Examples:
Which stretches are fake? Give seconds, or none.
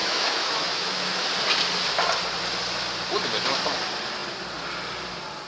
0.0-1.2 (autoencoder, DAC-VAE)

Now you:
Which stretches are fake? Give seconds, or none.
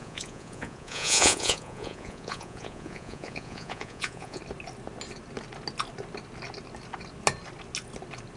0.0-4.4 (vocoder, Vocos)